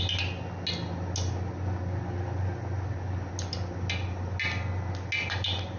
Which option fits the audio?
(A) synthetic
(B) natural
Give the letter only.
B